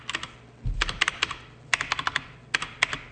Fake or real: real